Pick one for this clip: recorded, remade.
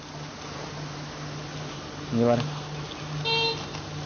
recorded